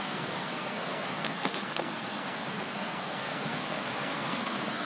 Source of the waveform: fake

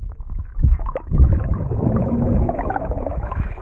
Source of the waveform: fake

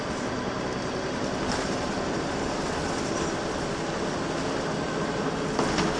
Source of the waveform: real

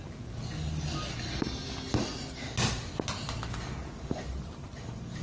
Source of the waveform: real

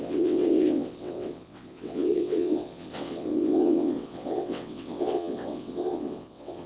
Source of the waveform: fake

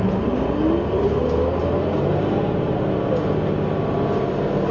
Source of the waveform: real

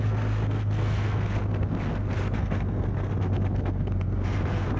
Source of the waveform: fake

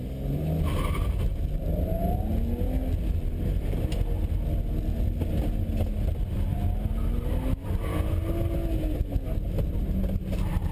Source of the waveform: real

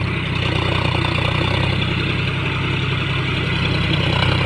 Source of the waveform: real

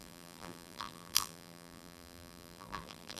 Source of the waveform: fake